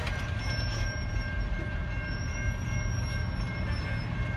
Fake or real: fake